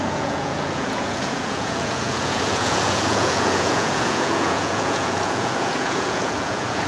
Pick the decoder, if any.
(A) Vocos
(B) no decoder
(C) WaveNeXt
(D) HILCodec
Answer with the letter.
A